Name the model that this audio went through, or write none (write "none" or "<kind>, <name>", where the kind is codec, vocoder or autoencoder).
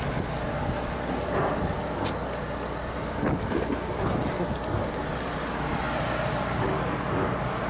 none